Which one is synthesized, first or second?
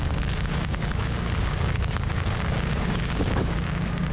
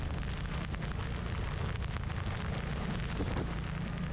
first